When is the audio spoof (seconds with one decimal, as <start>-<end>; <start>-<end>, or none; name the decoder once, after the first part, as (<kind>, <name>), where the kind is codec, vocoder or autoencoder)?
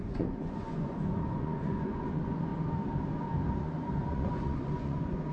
0.0-2.5 (vocoder, Vocos); 3.6-5.3